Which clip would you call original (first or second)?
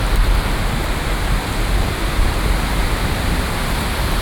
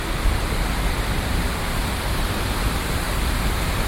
first